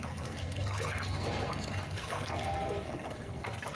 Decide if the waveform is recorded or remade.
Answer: remade